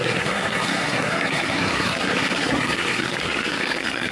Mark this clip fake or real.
fake